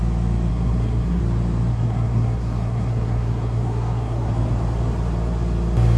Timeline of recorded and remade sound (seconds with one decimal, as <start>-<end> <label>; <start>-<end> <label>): 0.0-0.5 recorded; 0.5-1.2 remade; 1.2-1.7 recorded; 1.7-4.3 remade; 4.3-6.0 recorded